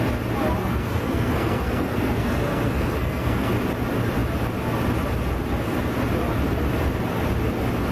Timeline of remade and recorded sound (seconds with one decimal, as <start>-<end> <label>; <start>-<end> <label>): 0.0-0.6 recorded; 0.6-3.5 remade; 3.5-7.9 recorded